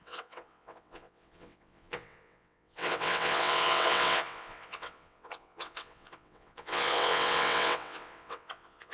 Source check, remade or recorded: remade